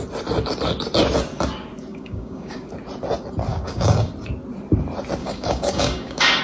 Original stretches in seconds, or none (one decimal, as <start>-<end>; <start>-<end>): 0.0-1.9; 2.7-3.5; 4.1-5.2